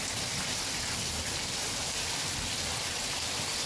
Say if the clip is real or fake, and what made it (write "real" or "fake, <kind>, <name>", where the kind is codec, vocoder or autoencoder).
real